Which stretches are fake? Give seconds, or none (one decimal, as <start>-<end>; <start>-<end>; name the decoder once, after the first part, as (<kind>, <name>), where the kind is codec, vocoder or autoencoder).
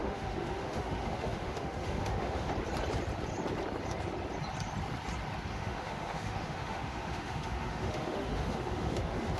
0.0-2.5 (autoencoder, DAC-VAE); 5.5-9.4